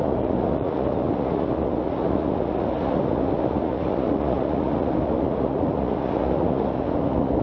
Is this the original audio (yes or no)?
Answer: no